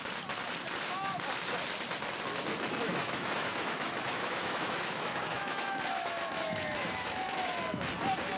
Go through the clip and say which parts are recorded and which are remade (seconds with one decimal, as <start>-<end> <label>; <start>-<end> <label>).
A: 0.0-2.9 recorded; 2.9-7.6 remade; 7.6-8.4 recorded